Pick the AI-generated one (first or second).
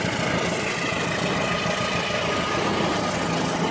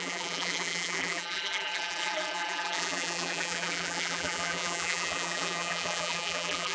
second